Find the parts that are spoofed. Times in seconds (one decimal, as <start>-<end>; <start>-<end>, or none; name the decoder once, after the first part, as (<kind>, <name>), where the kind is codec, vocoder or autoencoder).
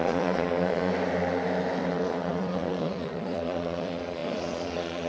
0.0-0.9 (vocoder, Vocos); 1.9-5.1